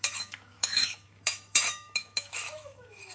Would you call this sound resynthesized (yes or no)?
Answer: yes